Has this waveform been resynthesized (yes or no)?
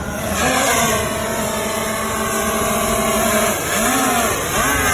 no